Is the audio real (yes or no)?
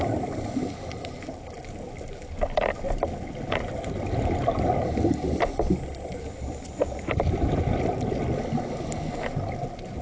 yes